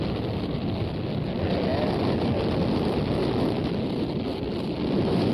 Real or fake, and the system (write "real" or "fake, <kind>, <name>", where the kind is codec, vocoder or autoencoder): real